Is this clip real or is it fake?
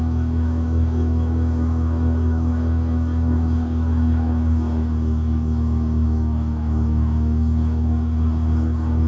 fake